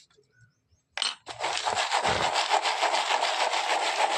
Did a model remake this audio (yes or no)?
no